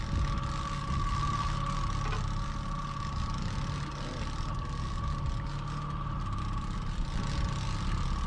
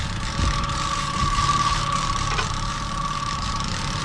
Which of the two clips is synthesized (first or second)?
second